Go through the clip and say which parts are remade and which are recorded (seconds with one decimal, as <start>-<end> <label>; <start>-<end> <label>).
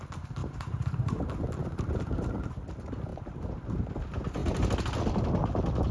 0.0-0.4 recorded; 0.4-1.2 remade; 1.2-1.6 recorded; 1.6-2.4 remade; 2.4-3.1 recorded; 3.1-3.6 remade; 3.6-5.9 recorded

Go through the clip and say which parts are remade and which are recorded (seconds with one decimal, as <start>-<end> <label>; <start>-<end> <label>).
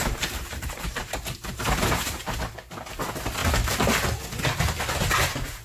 0.0-2.2 remade; 2.2-5.6 recorded